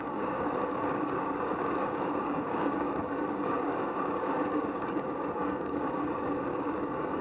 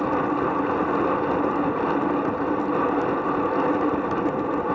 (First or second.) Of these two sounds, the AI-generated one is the first